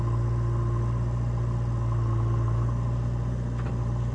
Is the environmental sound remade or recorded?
recorded